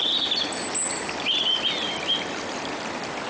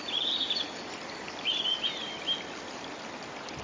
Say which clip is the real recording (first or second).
first